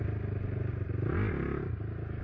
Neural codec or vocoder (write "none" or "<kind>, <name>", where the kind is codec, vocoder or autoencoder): none